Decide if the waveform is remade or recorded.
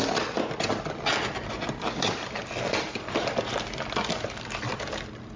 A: recorded